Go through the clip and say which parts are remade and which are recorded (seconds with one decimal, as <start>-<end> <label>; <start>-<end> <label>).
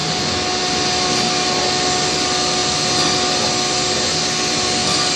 0.0-5.2 recorded